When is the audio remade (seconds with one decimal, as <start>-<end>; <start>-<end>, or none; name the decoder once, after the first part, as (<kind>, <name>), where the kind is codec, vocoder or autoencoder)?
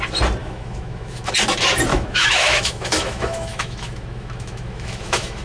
0.4-1.3 (autoencoder, DAC-VAE); 1.9-5.4